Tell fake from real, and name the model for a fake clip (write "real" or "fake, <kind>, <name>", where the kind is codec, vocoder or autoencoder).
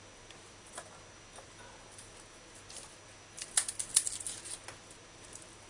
real